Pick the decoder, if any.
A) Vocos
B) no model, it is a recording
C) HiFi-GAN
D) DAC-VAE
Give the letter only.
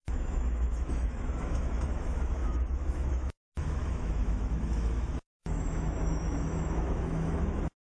D